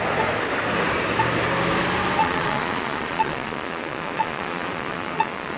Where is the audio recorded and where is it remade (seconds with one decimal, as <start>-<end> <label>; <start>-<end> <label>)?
0.0-2.2 recorded; 2.2-5.6 remade